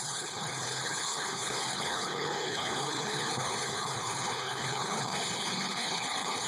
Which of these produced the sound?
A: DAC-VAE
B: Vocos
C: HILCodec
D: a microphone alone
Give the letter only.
C